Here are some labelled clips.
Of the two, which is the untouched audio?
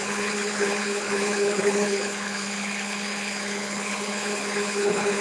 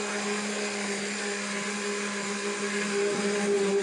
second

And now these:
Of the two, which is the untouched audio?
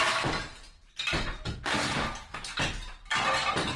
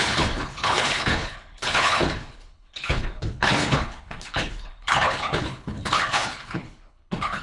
first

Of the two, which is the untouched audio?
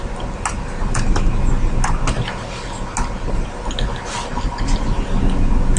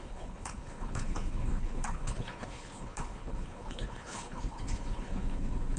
first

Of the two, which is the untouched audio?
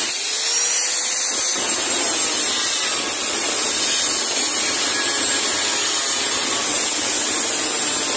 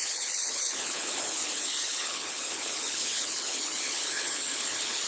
first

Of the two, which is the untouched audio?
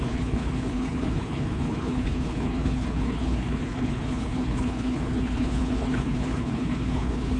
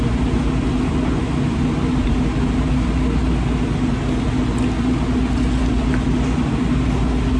second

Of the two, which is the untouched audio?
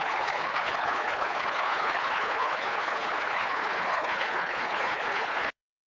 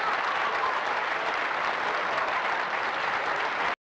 second